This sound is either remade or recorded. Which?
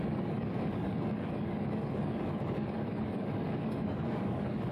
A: remade